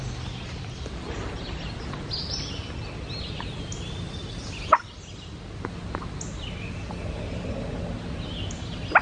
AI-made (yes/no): no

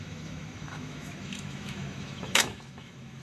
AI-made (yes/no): yes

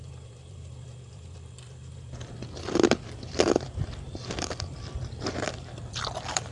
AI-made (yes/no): yes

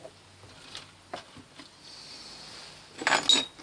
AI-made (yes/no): no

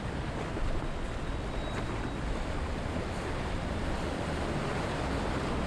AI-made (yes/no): yes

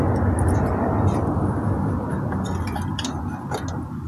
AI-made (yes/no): no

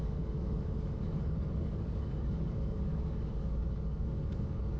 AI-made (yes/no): yes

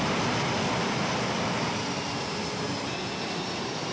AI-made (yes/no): no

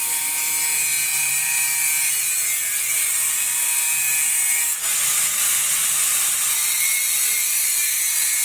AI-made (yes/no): no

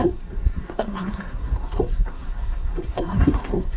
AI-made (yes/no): yes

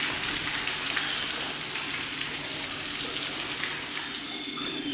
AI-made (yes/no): no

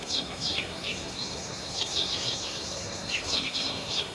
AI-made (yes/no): yes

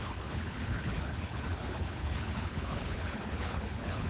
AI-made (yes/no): yes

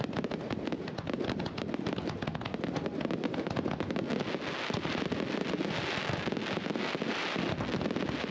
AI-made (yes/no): no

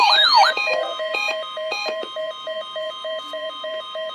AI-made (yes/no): yes